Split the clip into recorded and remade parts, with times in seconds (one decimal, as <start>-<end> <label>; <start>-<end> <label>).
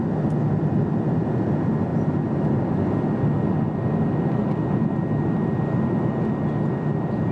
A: 0.0-7.3 recorded